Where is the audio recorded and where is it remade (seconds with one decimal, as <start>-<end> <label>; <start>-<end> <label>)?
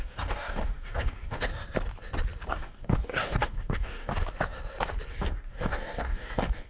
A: 0.0-1.5 remade; 1.5-2.5 recorded; 2.5-4.1 remade; 4.1-5.1 recorded; 5.1-6.7 remade